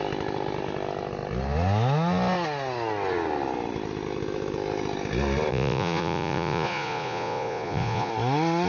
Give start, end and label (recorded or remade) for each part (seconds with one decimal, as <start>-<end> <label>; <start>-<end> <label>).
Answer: 0.0-5.5 recorded; 5.5-8.1 remade; 8.1-8.7 recorded